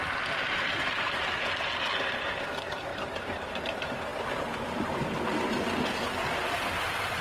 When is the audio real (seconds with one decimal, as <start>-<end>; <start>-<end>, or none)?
0.0-2.9; 3.6-7.2

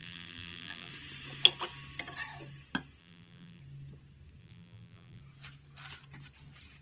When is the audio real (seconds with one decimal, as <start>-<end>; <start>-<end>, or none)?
0.9-3.0; 3.6-4.4; 5.2-6.8

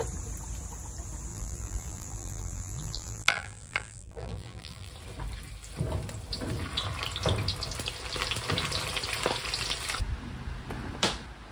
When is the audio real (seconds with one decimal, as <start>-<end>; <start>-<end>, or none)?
0.0-1.3; 4.9-11.5

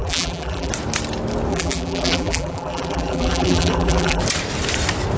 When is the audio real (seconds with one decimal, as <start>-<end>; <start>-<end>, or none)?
0.7-1.5; 4.2-5.2